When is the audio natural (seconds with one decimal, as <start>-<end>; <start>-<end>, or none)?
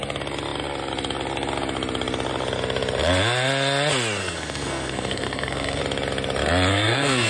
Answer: 0.0-4.2; 5.8-6.7